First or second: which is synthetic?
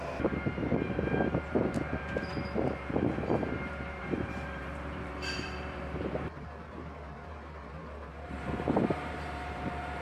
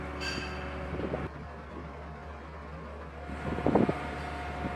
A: first